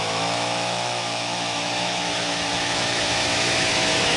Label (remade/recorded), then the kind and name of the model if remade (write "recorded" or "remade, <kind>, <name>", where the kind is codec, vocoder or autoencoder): remade, autoencoder, DAC-VAE